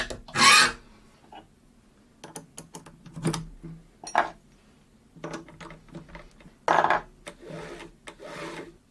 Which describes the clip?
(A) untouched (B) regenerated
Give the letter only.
A